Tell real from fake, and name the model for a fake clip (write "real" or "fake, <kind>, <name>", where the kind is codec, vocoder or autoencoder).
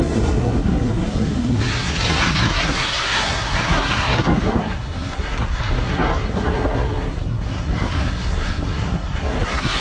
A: fake, codec, SNAC